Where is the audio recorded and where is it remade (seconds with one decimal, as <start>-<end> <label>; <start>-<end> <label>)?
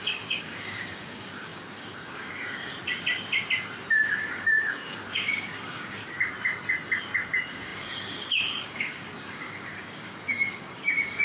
0.0-2.7 remade; 2.7-4.3 recorded; 4.3-6.0 remade; 6.0-7.3 recorded; 7.3-11.2 remade